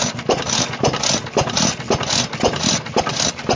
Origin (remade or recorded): recorded